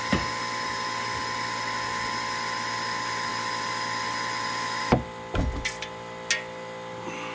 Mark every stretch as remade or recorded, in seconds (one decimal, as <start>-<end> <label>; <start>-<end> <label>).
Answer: 0.0-7.3 recorded